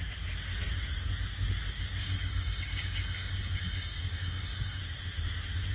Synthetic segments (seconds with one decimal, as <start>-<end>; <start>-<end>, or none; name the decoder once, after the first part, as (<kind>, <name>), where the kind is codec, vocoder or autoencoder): 2.0-4.8 (codec, DAC)